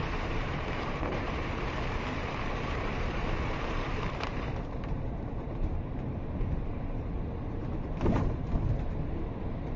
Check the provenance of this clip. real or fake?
fake